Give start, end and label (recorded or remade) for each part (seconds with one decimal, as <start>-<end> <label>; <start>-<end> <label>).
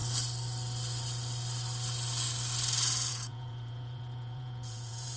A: 0.0-3.1 recorded; 3.1-5.2 remade